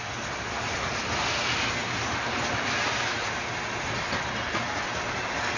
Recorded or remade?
recorded